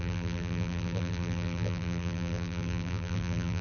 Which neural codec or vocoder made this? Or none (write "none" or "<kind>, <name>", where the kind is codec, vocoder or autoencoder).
vocoder, BigVGAN v2